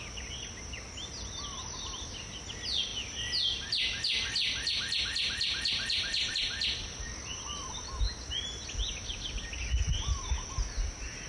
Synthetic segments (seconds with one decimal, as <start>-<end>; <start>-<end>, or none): none